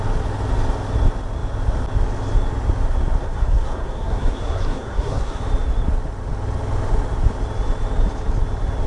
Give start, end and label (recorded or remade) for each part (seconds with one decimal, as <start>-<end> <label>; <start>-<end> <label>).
0.0-3.2 recorded; 3.2-5.4 remade; 5.4-8.9 recorded